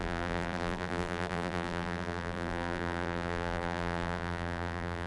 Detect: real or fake fake